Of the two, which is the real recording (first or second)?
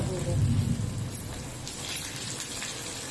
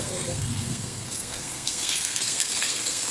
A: first